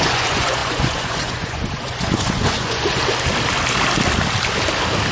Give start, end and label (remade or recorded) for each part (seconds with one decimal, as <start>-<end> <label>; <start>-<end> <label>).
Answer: 0.0-3.0 remade; 3.0-5.1 recorded